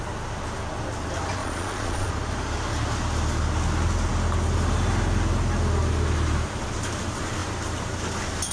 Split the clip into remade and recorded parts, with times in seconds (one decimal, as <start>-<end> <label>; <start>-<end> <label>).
0.0-1.4 recorded; 1.4-2.1 remade; 2.1-8.5 recorded